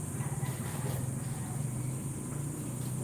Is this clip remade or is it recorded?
recorded